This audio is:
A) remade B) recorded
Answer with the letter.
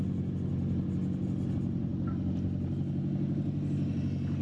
B